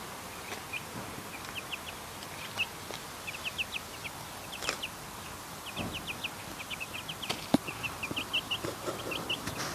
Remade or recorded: recorded